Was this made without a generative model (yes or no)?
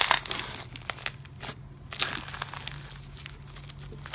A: yes